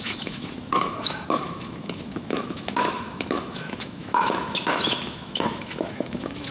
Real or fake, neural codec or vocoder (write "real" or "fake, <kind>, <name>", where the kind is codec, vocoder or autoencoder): fake, autoencoder, DAC-VAE